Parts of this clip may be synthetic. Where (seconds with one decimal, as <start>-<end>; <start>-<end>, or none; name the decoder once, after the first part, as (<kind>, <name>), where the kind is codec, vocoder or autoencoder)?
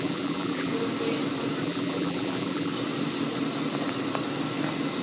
0.0-0.7 (vocoder, BigVGAN v2); 1.6-2.7